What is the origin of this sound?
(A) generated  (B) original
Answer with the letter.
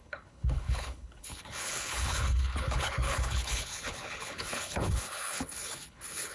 A